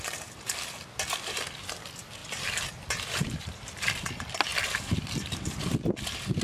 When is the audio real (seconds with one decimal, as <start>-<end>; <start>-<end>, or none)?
0.0-2.2; 3.8-6.4